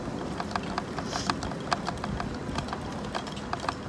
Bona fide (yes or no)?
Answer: yes